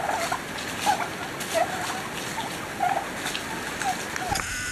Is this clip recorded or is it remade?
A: recorded